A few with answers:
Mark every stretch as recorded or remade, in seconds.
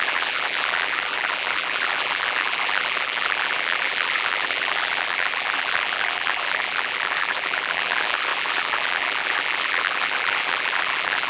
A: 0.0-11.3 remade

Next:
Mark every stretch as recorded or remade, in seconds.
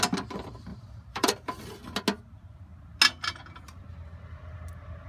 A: 0.0-0.7 recorded; 0.7-1.6 remade; 1.6-5.1 recorded